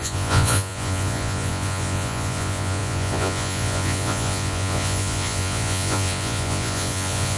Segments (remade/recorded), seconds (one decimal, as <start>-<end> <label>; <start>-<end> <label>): 0.0-7.4 remade